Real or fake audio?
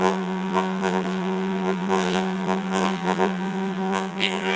fake